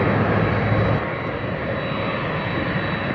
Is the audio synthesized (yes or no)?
no